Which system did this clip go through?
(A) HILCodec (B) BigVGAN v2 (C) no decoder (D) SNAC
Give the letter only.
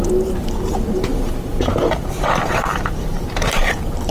B